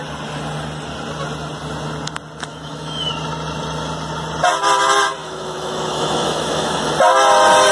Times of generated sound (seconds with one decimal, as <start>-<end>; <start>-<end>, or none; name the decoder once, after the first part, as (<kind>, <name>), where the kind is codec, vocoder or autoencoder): 2.5-3.1 (autoencoder, DAC-VAE); 5.2-6.9